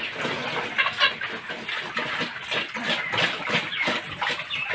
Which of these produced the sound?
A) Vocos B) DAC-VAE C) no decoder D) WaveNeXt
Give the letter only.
C